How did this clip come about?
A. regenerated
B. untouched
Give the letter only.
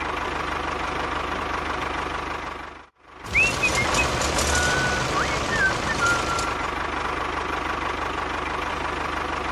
B